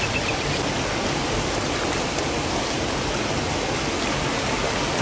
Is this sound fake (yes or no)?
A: no